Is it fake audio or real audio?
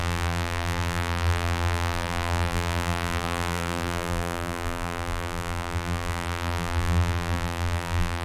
fake